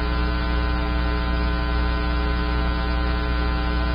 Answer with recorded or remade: recorded